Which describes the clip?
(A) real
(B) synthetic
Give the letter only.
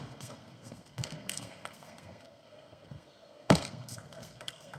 B